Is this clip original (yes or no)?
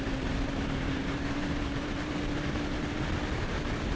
no